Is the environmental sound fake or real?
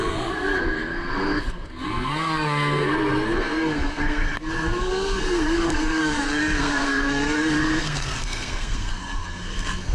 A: fake